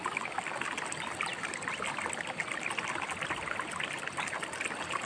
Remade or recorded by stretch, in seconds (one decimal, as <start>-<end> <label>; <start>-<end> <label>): 0.0-5.1 recorded